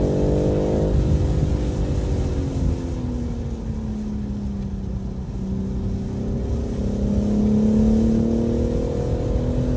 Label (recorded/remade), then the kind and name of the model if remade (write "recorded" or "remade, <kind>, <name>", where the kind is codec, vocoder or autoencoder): recorded